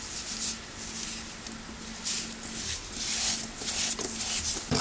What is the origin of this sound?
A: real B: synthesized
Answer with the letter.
A